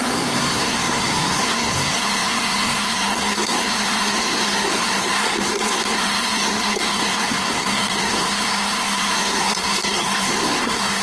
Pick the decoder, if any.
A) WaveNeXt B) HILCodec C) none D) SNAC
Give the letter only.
D